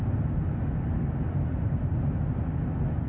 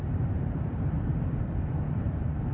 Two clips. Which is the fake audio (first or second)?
second